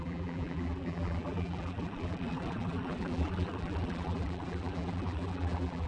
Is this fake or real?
fake